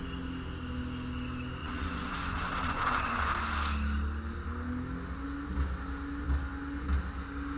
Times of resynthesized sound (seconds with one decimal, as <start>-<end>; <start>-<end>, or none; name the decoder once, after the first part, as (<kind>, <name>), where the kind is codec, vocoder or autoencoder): 1.6-3.3 (vocoder, Vocos)